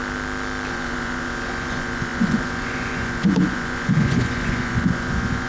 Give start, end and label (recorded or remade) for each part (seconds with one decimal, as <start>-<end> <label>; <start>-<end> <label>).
0.0-0.7 recorded; 0.7-5.5 remade